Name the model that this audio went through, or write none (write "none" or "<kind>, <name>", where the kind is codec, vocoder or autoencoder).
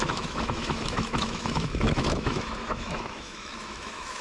autoencoder, DAC-VAE